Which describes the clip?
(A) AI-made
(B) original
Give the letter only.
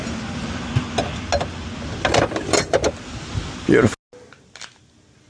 B